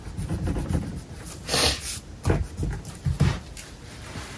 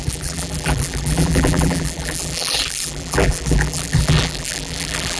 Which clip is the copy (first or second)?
second